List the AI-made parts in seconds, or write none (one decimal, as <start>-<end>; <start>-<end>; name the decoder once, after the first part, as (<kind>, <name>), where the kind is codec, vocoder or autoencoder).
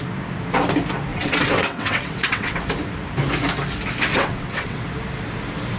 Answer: 1.1-2.6 (vocoder, WaveNeXt); 4.1-4.8